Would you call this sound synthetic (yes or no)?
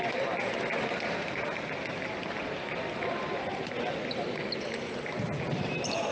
no